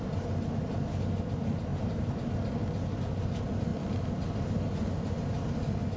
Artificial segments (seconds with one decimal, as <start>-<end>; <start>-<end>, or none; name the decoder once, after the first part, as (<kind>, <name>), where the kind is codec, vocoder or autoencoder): 1.7-2.3 (vocoder, BigVGAN v2)